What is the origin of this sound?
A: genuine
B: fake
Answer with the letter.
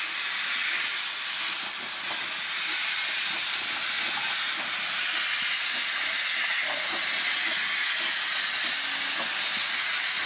A